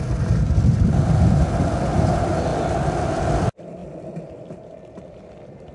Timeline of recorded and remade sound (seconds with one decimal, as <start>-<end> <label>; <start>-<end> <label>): 0.0-5.7 recorded